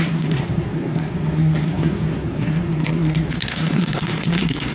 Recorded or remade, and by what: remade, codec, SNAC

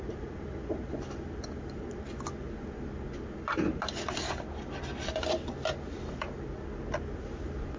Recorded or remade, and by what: recorded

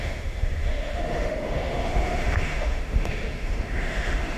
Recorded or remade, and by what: remade, autoencoder, DAC-VAE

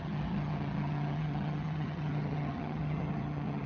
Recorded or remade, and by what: remade, vocoder, HiFi-GAN